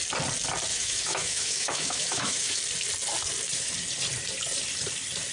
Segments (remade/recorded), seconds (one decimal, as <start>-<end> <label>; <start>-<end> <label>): 0.0-0.7 recorded; 0.7-2.6 remade; 2.6-5.3 recorded